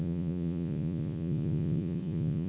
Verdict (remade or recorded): remade